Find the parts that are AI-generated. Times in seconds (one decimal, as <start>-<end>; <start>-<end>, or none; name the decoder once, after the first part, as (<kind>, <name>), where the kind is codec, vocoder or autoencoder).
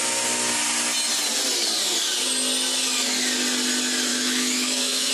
4.1-5.1 (autoencoder, DAC-VAE)